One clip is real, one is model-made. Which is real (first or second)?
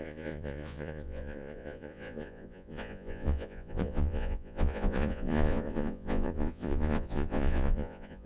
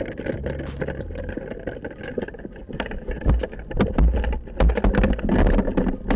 second